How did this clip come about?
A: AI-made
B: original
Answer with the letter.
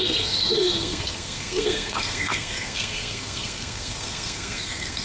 A